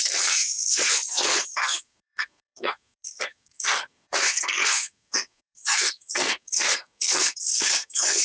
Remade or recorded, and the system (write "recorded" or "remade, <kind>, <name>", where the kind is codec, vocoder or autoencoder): remade, codec, SNAC